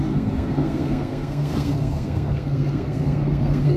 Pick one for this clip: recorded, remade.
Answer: remade